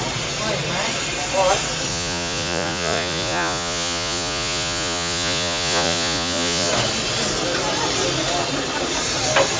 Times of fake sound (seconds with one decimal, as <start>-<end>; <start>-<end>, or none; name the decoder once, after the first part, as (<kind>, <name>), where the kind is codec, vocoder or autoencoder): 1.9-6.7 (vocoder, Vocos)

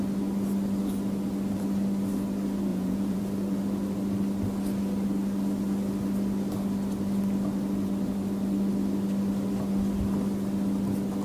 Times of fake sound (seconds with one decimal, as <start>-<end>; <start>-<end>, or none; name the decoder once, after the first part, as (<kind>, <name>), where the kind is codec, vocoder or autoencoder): 2.7-3.2 (vocoder, Vocos)

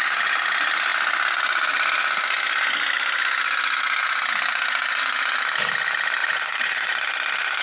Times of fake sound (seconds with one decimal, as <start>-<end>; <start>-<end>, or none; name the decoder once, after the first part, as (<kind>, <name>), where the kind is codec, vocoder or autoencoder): 6.2-6.9 (vocoder, Vocos)

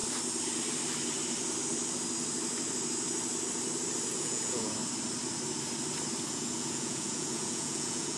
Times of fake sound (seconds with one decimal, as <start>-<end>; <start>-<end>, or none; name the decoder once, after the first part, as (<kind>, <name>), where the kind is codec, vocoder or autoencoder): 4.1-4.8 (vocoder, Vocos); 6.3-8.2